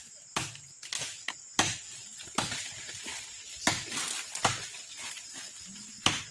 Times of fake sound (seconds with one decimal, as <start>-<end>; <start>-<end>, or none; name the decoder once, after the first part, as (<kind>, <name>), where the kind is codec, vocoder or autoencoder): none